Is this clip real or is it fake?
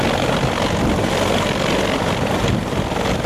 real